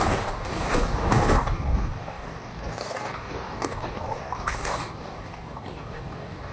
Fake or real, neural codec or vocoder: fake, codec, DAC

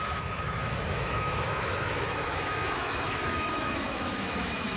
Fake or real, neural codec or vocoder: fake, autoencoder, DAC-VAE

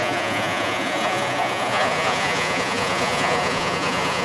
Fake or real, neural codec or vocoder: fake, vocoder, Vocos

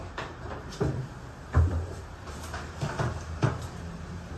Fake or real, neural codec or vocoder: fake, vocoder, BigVGAN v2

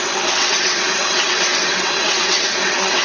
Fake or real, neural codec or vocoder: fake, vocoder, WaveNeXt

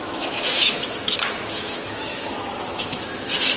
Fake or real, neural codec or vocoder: fake, autoencoder, DAC-VAE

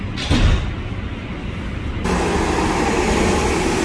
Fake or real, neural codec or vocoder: real